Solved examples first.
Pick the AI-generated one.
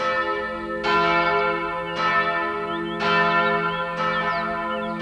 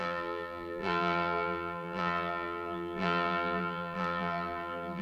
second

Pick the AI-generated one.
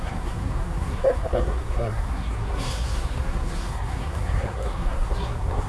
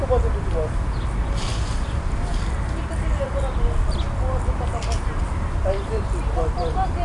first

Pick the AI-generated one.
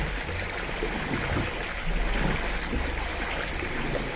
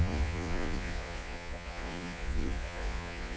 second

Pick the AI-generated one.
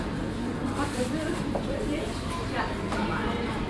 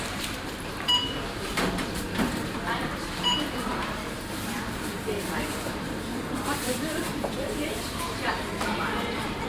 second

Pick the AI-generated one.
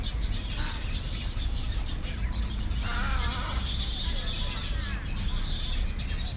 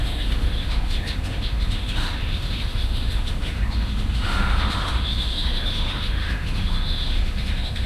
second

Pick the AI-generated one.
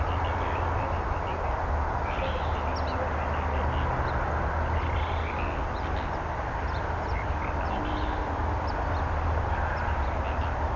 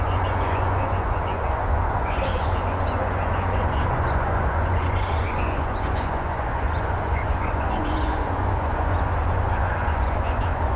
second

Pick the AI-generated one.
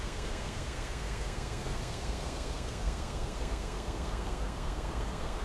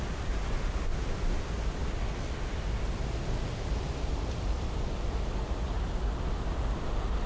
first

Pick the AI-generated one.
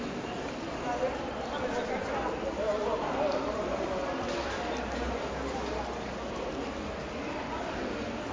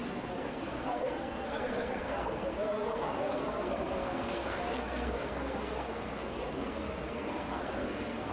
second